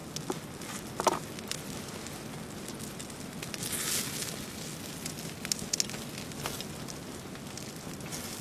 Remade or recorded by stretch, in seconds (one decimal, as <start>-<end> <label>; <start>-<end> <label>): 0.0-8.4 recorded